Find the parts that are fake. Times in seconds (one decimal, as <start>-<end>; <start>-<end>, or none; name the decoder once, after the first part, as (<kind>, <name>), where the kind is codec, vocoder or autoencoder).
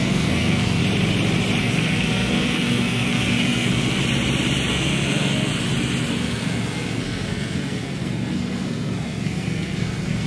0.0-0.8 (codec, SNAC); 1.6-4.0; 4.7-5.5; 6.1-10.3